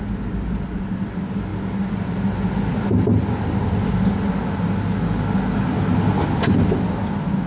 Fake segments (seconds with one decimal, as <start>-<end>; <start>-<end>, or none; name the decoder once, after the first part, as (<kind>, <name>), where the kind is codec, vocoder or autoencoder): none